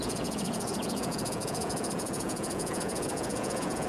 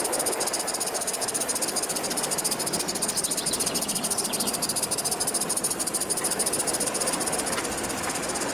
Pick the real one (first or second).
second